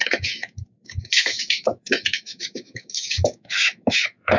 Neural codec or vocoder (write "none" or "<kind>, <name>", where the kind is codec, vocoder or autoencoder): autoencoder, DAC-VAE